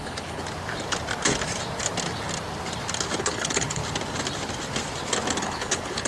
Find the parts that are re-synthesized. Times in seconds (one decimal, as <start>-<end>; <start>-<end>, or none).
0.0-0.4; 3.2-3.8; 5.4-6.1